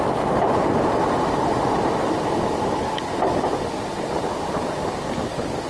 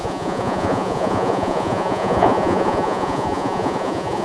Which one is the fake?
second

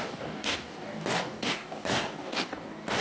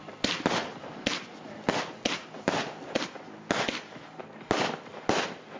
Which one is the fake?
first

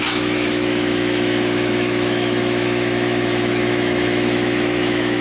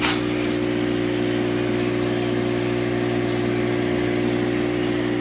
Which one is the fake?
first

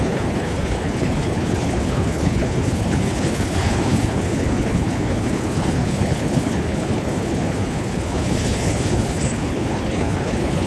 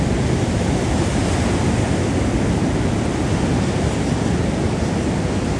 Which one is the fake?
first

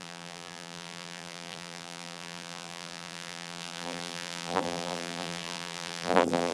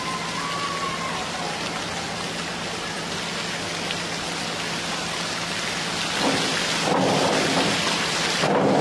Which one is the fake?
first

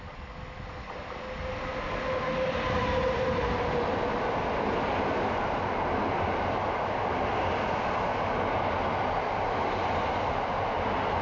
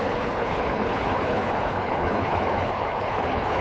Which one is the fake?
second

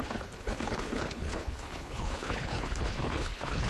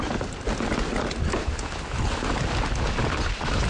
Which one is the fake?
first